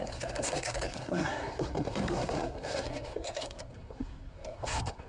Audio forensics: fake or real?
fake